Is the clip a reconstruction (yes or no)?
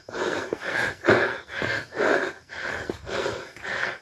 yes